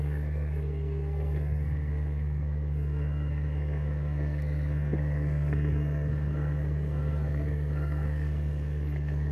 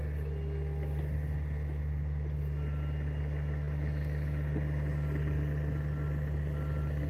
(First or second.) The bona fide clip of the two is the second